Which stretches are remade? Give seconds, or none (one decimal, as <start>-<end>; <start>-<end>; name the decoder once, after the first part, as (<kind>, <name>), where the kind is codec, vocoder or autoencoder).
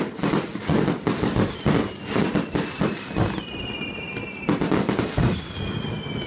none